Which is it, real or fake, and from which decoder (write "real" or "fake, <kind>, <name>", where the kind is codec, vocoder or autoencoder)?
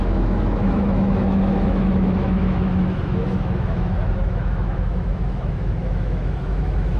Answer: fake, autoencoder, DAC-VAE